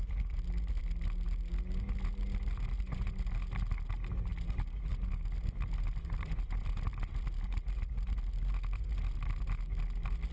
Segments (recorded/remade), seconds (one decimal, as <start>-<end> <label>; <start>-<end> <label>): 0.0-10.3 recorded